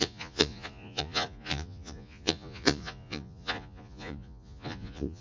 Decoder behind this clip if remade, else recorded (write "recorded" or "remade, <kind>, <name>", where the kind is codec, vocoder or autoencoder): remade, vocoder, Vocos